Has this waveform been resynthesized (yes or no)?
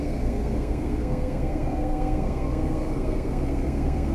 yes